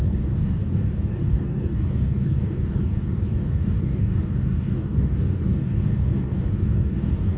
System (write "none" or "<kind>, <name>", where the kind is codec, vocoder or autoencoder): codec, DAC